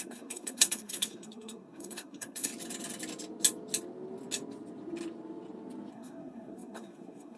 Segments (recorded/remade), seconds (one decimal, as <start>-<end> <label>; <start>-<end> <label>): 0.0-2.5 remade; 2.5-5.9 recorded; 5.9-7.4 remade